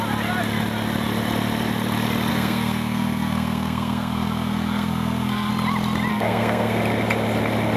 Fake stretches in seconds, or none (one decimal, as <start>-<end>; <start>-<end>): 2.3-5.5; 6.1-6.8